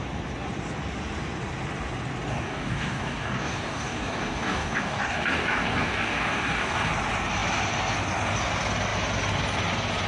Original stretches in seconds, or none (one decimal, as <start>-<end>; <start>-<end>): 0.0-2.3; 6.9-10.1